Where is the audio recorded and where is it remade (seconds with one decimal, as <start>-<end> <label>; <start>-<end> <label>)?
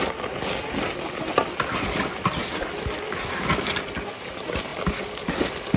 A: 0.0-5.8 recorded